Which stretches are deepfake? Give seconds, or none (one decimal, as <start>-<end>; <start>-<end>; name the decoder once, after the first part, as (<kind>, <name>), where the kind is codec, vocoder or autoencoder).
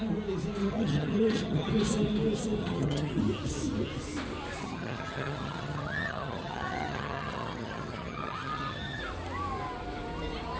0.6-1.7 (vocoder, HiFi-GAN); 2.6-3.2; 4.6-9.0